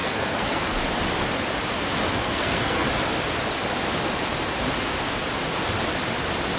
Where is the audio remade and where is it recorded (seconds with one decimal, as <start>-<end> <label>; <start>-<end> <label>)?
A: 0.0-0.8 remade; 0.8-2.2 recorded; 2.2-2.9 remade; 2.9-6.6 recorded

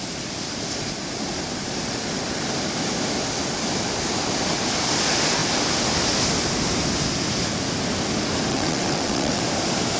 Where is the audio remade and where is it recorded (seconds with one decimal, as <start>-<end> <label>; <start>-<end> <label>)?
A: 0.0-8.5 recorded; 8.5-9.4 remade; 9.4-10.0 recorded

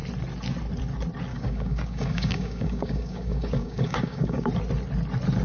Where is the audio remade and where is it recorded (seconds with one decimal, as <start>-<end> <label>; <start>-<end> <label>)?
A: 0.0-1.3 recorded; 1.3-4.5 remade; 4.5-5.4 recorded

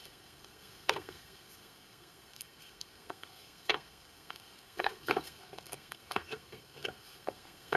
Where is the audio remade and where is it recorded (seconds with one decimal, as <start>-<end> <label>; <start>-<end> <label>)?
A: 0.0-7.8 remade

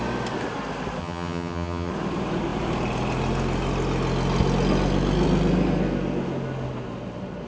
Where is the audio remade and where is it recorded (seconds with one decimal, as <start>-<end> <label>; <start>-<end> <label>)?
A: 0.0-1.0 recorded; 1.0-1.9 remade; 1.9-7.5 recorded

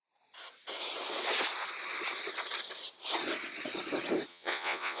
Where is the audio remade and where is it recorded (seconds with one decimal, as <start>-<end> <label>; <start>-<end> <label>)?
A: 0.0-4.3 recorded; 4.3-5.0 remade

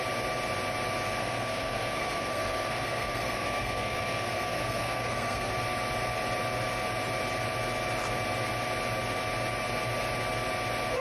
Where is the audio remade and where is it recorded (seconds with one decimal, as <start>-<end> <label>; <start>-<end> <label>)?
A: 0.0-1.2 recorded; 1.2-5.5 remade; 5.5-11.0 recorded